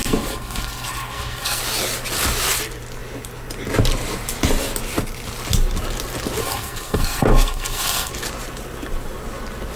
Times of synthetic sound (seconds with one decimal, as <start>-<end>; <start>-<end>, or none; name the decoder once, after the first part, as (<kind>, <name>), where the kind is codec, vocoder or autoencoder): 0.0-1.6 (codec, SNAC); 6.4-8.1